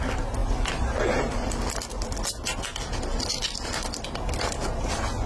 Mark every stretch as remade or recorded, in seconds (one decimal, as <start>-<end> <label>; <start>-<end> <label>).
0.0-0.4 recorded; 0.4-1.7 remade; 1.7-5.3 recorded